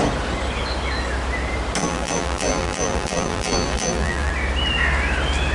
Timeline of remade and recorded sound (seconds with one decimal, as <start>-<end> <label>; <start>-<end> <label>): 0.0-1.8 recorded; 1.8-4.3 remade; 4.3-5.5 recorded